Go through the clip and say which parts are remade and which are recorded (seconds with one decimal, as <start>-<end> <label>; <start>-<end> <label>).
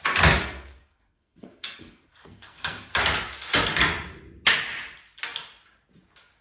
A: 0.0-0.4 recorded; 0.4-2.9 remade; 2.9-6.4 recorded